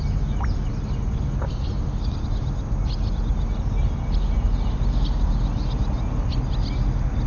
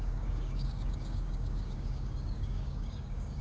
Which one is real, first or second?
first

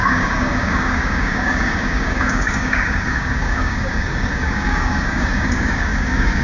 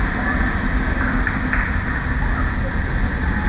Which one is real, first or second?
second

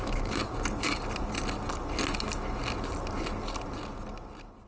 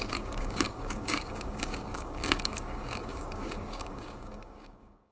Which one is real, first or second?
first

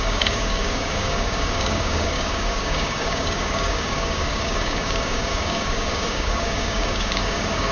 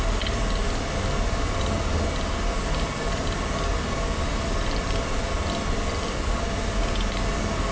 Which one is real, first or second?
second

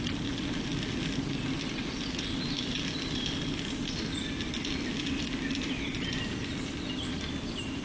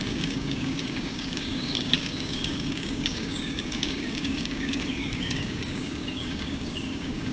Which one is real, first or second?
first